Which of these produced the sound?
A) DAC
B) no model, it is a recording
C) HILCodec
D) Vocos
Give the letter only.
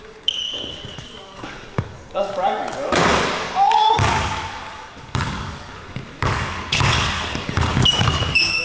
A